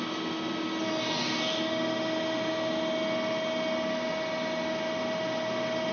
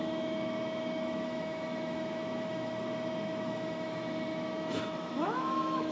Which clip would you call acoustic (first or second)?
first